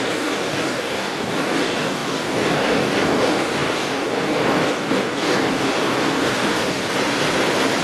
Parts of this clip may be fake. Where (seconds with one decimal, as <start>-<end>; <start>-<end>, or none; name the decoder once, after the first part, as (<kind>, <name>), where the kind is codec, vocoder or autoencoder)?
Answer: 0.0-6.8 (codec, DAC)